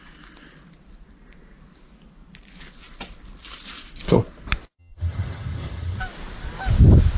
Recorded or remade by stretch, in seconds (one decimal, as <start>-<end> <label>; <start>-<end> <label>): 0.0-4.8 recorded; 4.8-6.0 remade; 6.0-7.2 recorded